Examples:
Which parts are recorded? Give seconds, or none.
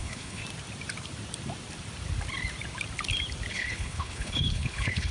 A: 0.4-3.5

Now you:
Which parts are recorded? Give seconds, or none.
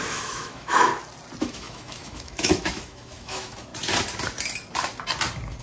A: 0.9-1.4; 3.7-5.6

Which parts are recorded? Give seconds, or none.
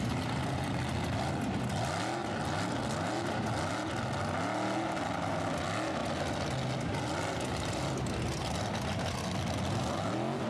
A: 0.0-10.5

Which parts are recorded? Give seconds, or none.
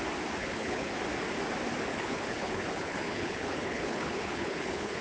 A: 0.0-0.4; 0.9-1.9